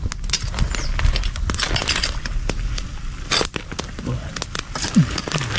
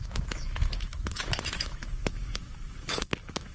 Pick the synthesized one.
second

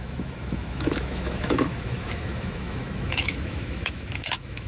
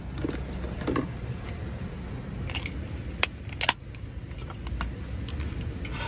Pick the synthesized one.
first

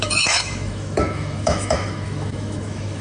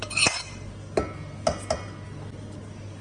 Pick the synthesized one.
first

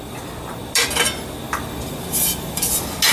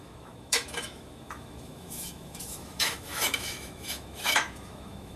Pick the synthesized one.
second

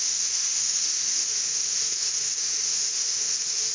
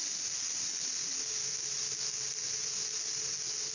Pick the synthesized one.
first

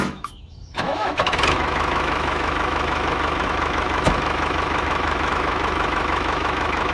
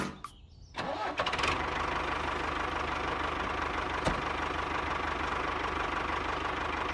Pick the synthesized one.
first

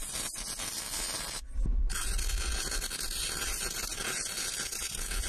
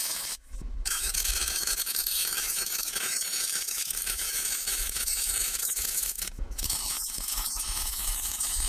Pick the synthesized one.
second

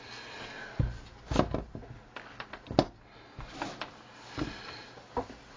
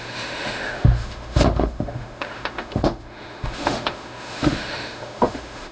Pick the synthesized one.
second